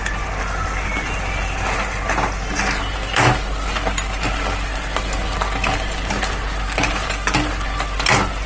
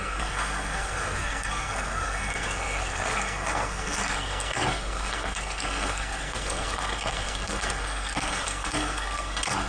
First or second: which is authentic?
first